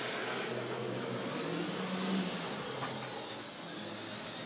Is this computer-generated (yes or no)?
no